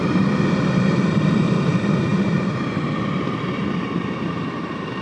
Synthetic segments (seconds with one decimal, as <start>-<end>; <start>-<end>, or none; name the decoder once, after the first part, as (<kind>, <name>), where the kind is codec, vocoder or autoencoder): 0.0-5.0 (vocoder, BigVGAN v2)

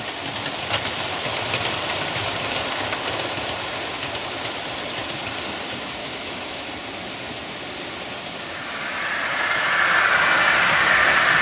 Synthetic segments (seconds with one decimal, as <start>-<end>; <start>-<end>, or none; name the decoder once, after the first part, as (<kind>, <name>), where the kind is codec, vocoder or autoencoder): 6.0-6.7 (autoencoder, DAC-VAE)

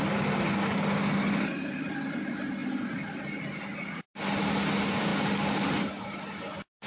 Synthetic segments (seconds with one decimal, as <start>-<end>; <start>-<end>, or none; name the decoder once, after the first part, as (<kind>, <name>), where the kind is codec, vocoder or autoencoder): none

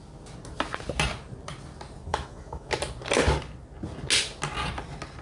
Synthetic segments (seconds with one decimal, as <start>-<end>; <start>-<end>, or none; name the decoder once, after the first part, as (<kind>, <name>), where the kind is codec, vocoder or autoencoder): 2.1-2.7 (autoencoder, DAC-VAE)

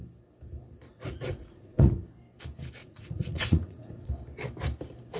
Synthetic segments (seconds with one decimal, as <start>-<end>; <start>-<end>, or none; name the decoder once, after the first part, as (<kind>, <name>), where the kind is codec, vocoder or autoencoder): 0.9-1.9 (vocoder, Vocos); 2.8-4.1

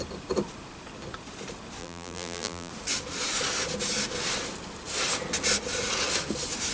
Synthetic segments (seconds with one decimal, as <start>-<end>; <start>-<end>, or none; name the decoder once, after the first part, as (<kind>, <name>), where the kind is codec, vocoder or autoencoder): 1.8-2.7 (vocoder, BigVGAN v2)

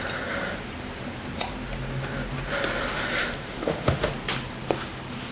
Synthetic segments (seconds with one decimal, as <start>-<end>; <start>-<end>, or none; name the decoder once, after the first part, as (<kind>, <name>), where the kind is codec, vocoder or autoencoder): 3.2-4.1 (autoencoder, DAC-VAE)

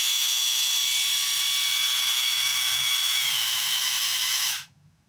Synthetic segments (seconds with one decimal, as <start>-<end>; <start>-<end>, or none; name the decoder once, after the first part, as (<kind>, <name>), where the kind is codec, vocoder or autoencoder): 0.0-0.7 (autoencoder, DAC-VAE); 2.1-5.1